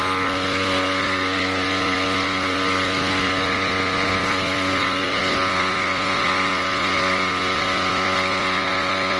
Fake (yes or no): no